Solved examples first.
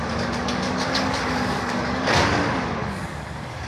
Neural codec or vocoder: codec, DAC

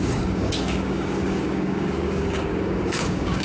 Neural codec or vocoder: codec, DAC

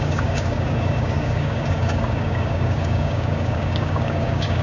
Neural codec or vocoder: codec, DAC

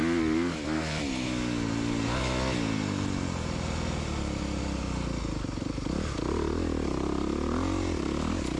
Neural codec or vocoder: none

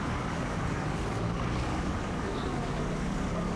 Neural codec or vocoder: codec, DAC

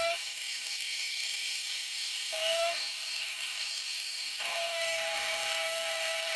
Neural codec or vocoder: codec, DAC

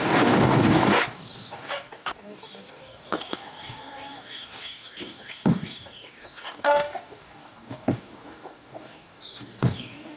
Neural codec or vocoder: codec, DAC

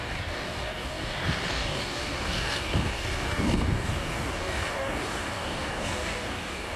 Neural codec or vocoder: codec, DAC